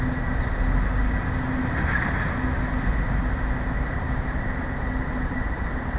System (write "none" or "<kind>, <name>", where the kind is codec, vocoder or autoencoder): none